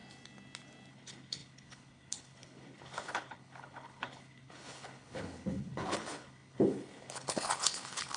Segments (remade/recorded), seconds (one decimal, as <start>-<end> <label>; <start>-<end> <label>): 0.0-0.9 recorded; 0.9-8.2 remade